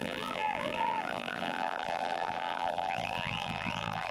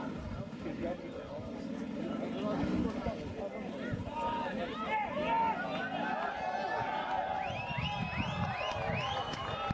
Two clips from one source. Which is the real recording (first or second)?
second